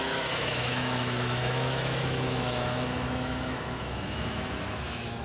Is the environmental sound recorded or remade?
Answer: remade